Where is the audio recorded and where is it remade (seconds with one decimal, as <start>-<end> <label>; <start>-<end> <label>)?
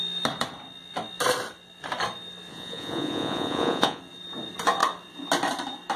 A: 0.0-2.5 recorded; 2.5-4.0 remade; 4.0-6.0 recorded